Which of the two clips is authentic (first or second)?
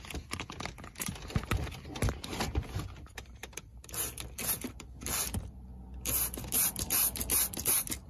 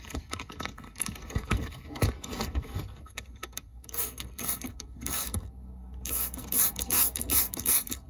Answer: first